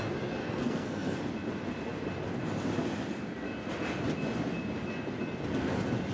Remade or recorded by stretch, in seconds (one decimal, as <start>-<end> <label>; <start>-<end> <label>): 0.0-0.4 recorded; 0.4-1.2 remade; 1.2-6.1 recorded